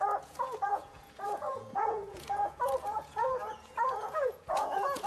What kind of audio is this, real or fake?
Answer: fake